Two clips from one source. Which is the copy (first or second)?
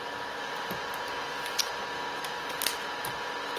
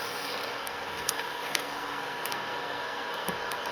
second